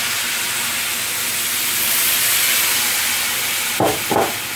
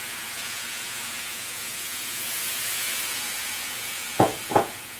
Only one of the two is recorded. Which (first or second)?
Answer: first